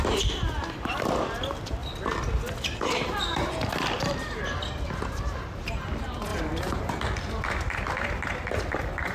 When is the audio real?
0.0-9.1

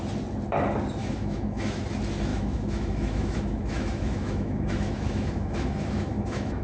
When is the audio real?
0.0-1.0; 1.8-2.3

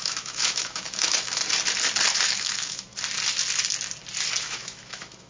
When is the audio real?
1.4-2.2; 2.9-4.4